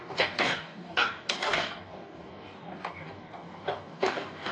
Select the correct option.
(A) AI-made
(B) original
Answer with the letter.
A